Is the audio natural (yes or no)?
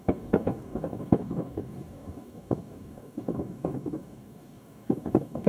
no